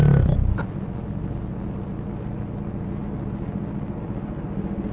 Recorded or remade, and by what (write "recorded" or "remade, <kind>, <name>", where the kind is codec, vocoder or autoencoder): recorded